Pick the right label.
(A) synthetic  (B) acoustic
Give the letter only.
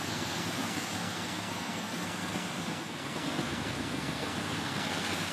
A